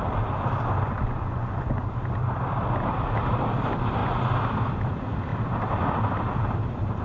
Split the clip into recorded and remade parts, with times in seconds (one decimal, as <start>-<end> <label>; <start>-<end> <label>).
0.0-0.9 recorded; 0.9-1.8 remade; 1.8-7.0 recorded